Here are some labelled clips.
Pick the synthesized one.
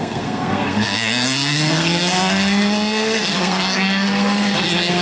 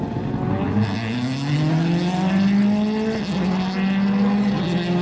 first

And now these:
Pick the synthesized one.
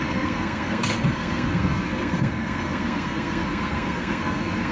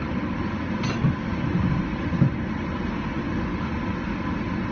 first